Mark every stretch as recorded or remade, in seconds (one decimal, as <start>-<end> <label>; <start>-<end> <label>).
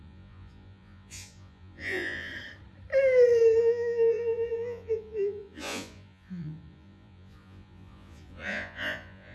0.0-2.3 remade; 2.3-3.6 recorded; 3.6-9.3 remade